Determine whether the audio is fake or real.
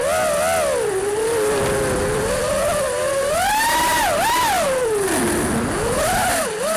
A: real